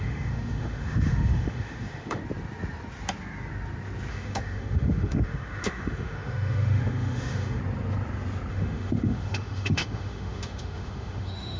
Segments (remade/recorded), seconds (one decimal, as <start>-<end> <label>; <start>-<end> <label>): 0.0-2.2 remade; 2.2-4.1 recorded; 4.1-7.6 remade; 7.6-8.5 recorded; 8.5-11.6 remade